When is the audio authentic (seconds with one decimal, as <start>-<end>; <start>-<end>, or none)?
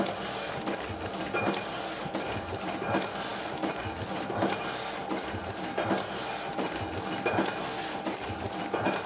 0.0-3.3; 3.8-9.1